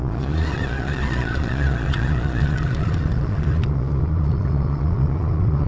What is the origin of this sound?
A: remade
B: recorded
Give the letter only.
A